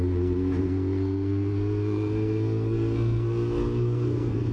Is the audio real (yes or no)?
no